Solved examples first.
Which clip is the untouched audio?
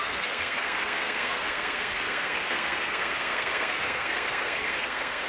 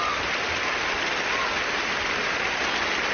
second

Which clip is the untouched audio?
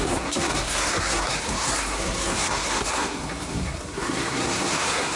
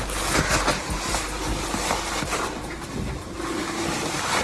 second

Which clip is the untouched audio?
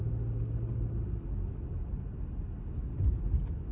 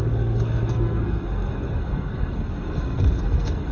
first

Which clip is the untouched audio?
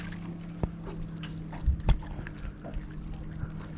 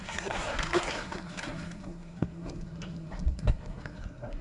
first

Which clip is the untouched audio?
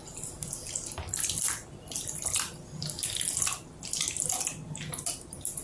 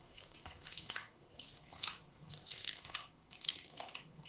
first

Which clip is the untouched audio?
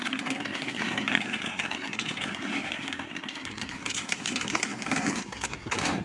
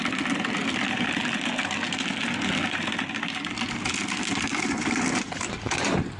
second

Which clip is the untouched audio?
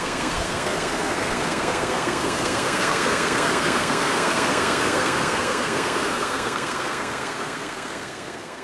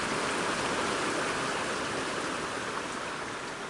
second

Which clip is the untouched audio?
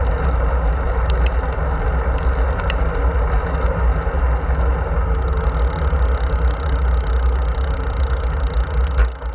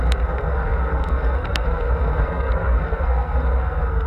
first